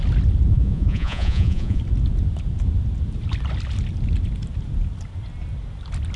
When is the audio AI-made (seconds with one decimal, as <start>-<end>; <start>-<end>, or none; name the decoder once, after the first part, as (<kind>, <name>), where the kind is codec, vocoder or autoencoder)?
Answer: 0.5-1.8 (vocoder, Vocos)